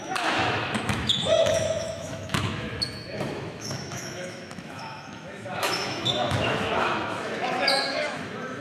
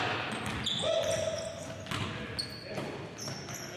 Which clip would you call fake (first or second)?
first